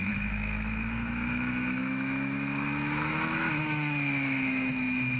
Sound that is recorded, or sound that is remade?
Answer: remade